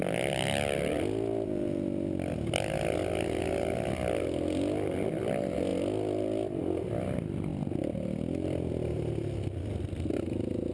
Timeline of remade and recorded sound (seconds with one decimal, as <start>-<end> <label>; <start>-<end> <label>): 0.0-10.7 recorded